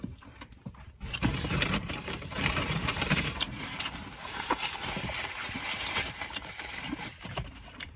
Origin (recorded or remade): remade